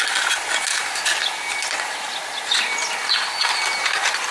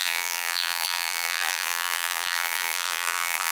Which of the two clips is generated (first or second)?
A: second